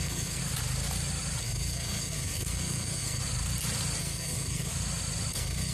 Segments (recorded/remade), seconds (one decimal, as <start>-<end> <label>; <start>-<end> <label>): 0.0-0.4 remade; 0.4-1.4 recorded; 1.4-3.2 remade; 3.2-4.0 recorded; 4.0-4.7 remade; 4.7-5.3 recorded; 5.3-5.7 remade